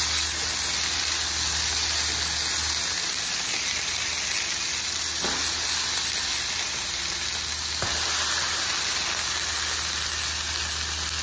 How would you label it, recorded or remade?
recorded